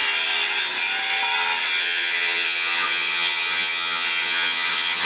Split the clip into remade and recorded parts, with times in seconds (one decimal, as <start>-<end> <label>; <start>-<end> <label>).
0.0-1.8 recorded; 1.8-5.1 remade